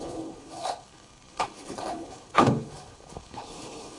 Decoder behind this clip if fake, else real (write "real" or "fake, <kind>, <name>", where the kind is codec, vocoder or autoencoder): fake, codec, HILCodec